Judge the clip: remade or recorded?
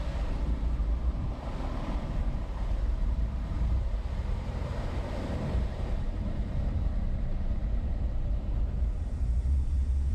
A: remade